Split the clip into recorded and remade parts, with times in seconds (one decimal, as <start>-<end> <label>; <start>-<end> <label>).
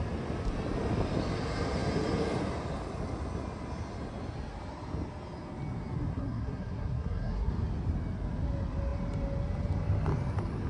0.0-6.1 recorded; 6.1-7.5 remade; 7.5-10.7 recorded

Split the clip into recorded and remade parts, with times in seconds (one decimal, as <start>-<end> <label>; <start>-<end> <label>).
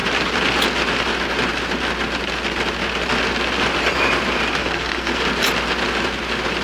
0.0-4.6 recorded; 4.6-5.2 remade; 5.2-6.6 recorded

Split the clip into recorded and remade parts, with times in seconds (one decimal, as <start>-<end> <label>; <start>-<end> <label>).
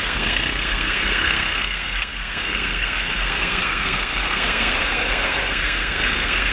0.0-6.5 remade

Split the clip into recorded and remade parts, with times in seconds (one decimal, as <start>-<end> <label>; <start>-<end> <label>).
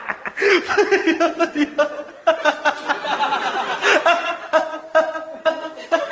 0.0-5.4 recorded; 5.4-6.1 remade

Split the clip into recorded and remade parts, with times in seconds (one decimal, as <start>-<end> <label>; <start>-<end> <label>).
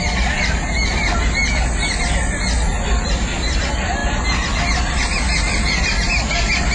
0.0-6.7 recorded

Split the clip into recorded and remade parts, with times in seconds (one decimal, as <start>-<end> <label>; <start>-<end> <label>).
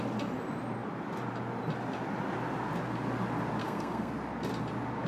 0.0-3.6 recorded; 3.6-4.1 remade; 4.1-5.1 recorded